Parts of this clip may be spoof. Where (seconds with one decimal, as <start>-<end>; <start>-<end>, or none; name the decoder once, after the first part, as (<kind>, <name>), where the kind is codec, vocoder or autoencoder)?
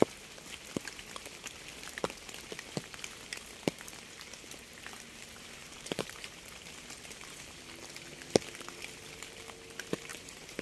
5.6-6.5 (vocoder, BigVGAN v2); 10.1-10.6